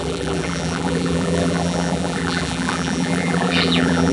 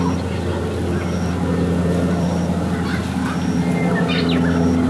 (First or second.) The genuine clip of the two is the second